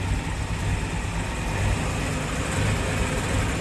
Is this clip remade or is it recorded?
recorded